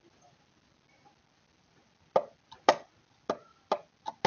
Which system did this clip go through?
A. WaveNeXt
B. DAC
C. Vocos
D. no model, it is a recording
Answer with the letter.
D